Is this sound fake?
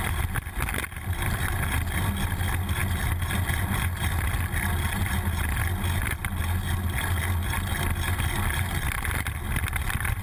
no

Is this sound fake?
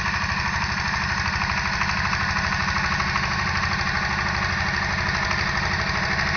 no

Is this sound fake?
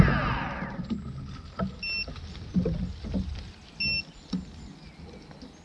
no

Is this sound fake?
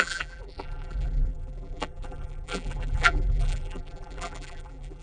yes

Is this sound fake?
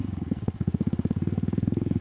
yes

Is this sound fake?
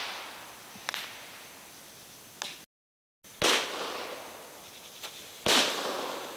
no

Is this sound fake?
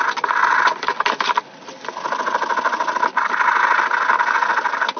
no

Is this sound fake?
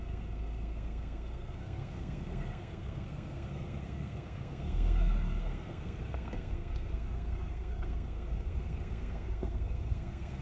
yes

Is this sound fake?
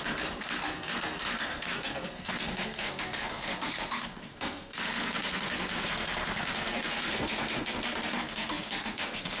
yes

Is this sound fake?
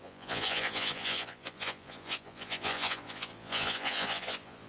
yes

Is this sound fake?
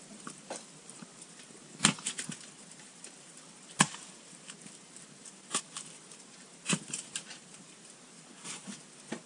yes